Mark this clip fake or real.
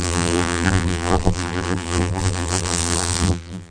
fake